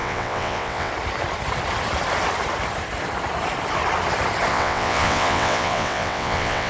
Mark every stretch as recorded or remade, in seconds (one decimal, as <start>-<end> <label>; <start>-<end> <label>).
0.0-0.9 remade; 0.9-4.5 recorded; 4.5-6.7 remade